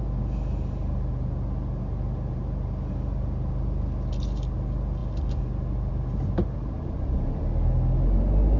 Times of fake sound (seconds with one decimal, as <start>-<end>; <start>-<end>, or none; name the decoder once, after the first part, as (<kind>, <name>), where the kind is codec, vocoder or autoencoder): none